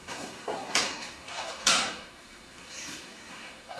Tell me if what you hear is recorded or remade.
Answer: remade